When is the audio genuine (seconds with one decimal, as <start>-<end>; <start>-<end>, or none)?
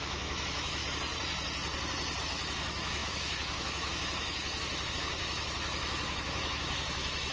0.8-2.2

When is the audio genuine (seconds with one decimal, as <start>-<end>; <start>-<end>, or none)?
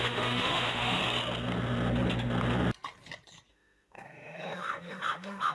1.0-3.5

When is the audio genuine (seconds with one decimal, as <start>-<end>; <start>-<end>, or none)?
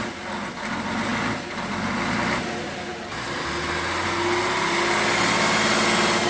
0.0-6.3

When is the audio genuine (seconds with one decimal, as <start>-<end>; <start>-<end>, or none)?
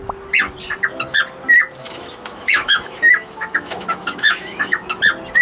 0.0-1.8; 5.0-5.4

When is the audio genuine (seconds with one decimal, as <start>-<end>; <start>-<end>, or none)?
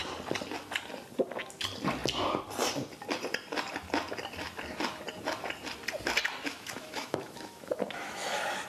0.0-6.5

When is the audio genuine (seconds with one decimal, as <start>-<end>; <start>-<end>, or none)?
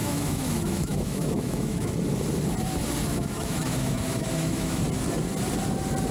1.9-3.1; 4.8-6.1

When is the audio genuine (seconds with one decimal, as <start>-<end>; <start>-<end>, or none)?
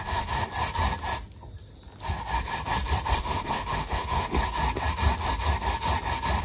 0.5-3.2; 4.6-6.4